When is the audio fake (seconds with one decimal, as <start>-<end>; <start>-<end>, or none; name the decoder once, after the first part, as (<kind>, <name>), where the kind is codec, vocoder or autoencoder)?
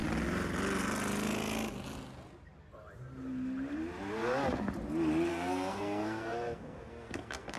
5.3-7.6 (codec, SNAC)